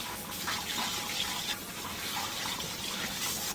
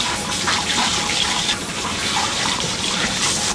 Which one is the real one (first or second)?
first